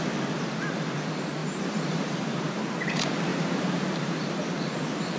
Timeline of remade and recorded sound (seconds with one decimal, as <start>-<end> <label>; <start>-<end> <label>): 0.0-1.4 recorded; 1.4-2.4 remade; 2.4-3.3 recorded; 3.3-4.3 remade; 4.3-5.2 recorded